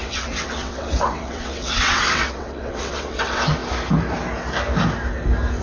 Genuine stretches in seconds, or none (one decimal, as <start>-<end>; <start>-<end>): 3.6-5.6